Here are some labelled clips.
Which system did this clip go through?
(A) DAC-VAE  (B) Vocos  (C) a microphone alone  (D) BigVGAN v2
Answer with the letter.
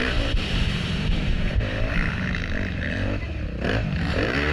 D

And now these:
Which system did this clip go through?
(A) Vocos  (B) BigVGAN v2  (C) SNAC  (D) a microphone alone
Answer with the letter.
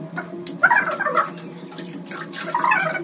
D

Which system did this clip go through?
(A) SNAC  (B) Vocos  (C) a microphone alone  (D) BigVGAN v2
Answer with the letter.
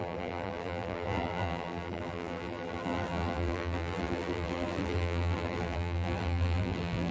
D